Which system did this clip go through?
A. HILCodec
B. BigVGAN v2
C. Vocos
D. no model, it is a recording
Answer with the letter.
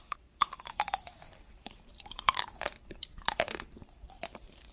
B